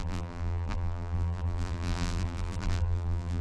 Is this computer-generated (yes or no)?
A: yes